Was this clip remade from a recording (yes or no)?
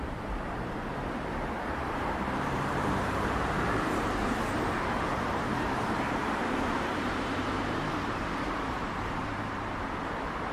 yes